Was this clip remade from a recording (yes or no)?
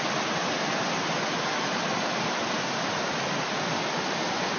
no